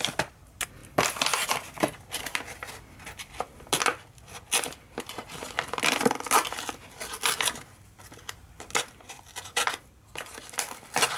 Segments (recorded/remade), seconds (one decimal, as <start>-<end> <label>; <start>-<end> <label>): 0.0-11.2 recorded